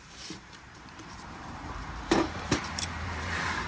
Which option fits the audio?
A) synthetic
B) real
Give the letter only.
A